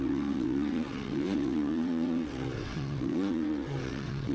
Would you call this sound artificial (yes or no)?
yes